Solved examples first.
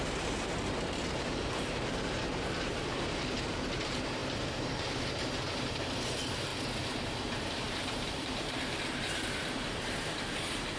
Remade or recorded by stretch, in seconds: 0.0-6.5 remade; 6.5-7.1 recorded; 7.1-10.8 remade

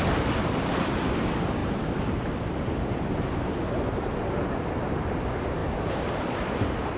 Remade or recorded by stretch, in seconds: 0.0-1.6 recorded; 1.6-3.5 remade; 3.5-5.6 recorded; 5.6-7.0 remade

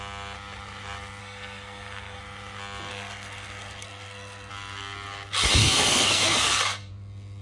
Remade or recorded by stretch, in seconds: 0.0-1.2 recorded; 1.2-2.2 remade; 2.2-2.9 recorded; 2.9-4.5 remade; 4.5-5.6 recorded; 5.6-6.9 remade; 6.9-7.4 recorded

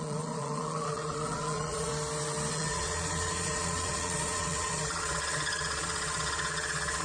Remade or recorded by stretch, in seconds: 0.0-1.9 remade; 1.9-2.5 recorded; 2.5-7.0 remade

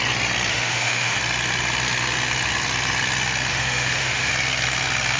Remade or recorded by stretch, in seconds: 0.0-0.5 recorded; 0.5-1.2 remade; 1.2-3.5 recorded; 3.5-4.3 remade; 4.3-5.2 recorded

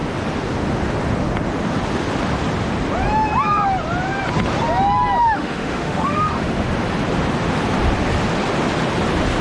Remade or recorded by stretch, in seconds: 0.0-5.2 recorded; 5.2-6.7 remade; 6.7-9.4 recorded

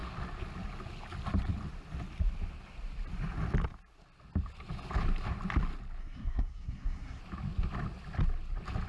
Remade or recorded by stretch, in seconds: 0.0-6.0 recorded; 6.0-7.2 remade; 7.2-8.9 recorded

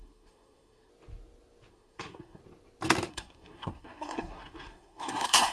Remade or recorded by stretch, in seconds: 0.0-0.9 remade; 0.9-1.7 recorded; 1.7-2.4 remade; 2.4-3.1 recorded; 3.1-5.5 remade